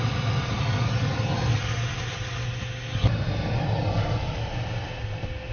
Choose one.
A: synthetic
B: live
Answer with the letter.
B